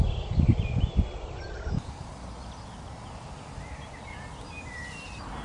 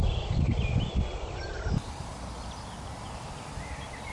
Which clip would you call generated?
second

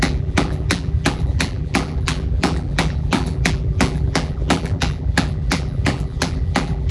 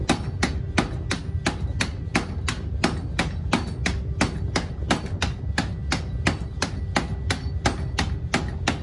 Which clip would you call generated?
first